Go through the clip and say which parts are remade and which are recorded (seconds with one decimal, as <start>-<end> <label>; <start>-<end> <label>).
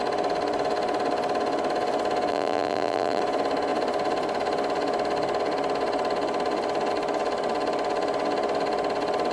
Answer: 0.0-2.3 recorded; 2.3-3.2 remade; 3.2-9.3 recorded